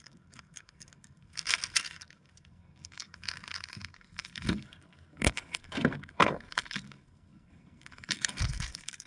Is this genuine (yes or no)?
no